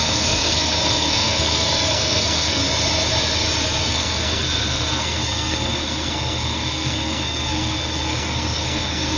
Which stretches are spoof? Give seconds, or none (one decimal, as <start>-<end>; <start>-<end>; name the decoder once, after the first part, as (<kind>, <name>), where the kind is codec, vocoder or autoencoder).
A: 0.0-2.6 (codec, SNAC); 3.9-9.2